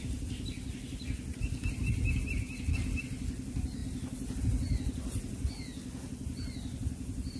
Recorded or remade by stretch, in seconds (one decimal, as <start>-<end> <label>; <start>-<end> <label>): 0.0-7.4 recorded